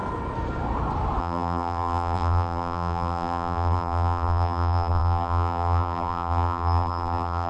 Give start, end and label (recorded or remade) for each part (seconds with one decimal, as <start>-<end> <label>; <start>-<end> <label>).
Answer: 0.0-1.2 recorded; 1.2-7.5 remade